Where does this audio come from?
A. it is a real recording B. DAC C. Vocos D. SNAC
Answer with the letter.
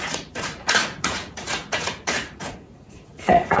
C